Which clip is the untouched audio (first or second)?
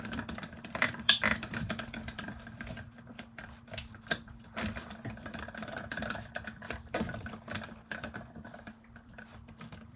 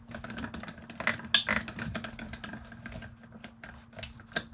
second